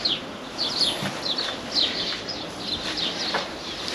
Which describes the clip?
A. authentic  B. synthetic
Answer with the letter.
A